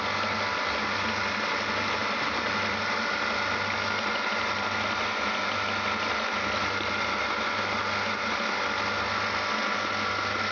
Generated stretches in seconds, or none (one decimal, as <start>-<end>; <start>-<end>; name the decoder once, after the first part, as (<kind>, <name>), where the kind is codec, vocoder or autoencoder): 2.0-2.5 (vocoder, BigVGAN v2)